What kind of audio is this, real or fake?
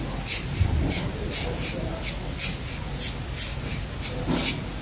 real